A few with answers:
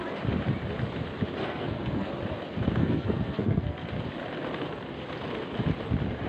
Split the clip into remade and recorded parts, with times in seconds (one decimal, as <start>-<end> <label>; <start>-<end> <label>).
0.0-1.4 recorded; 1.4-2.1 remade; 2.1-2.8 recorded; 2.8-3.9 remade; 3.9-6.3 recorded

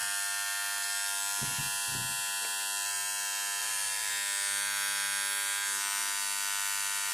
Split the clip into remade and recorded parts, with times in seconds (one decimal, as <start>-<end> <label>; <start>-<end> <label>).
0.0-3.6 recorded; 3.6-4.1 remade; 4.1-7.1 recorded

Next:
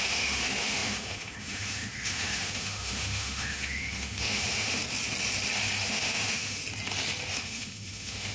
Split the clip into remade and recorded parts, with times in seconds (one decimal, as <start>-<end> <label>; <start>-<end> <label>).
0.0-4.8 remade; 4.8-5.8 recorded; 5.8-6.6 remade; 6.6-7.3 recorded; 7.3-8.3 remade

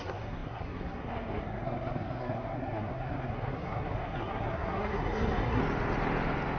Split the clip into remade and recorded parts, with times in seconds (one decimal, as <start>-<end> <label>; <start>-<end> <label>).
0.0-5.6 remade; 5.6-6.6 recorded